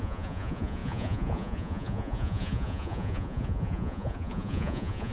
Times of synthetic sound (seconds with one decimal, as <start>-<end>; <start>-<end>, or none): 0.0-5.1